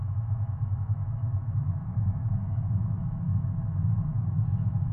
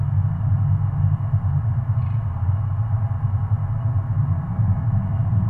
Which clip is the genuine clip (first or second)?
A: second